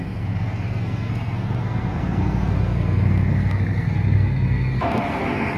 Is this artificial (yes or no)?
yes